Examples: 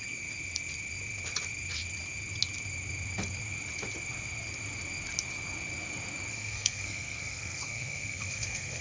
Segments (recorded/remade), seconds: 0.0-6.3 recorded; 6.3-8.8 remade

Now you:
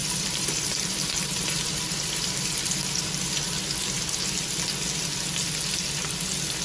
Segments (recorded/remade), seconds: 0.0-4.0 remade; 4.0-6.6 recorded